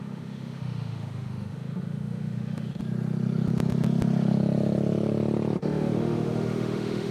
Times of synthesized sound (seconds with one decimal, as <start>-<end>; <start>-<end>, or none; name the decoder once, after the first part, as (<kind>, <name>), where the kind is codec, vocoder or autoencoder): 0.0-2.8 (autoencoder, DAC-VAE); 5.6-7.1